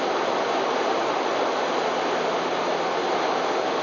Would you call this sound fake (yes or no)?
no